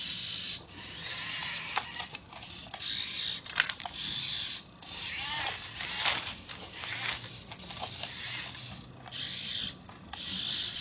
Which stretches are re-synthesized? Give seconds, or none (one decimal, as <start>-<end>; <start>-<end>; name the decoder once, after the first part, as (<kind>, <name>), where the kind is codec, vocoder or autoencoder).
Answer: none